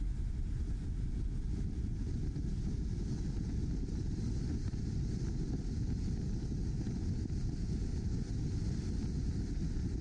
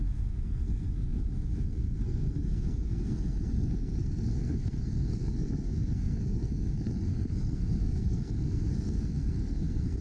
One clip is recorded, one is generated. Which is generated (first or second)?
second